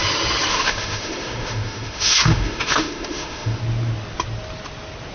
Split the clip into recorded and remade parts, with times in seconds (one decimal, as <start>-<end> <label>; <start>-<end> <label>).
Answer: 0.0-0.5 recorded; 0.5-3.6 remade; 3.6-5.1 recorded